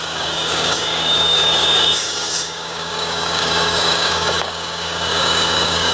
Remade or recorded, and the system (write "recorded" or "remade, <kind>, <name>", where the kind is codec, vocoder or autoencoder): remade, codec, DAC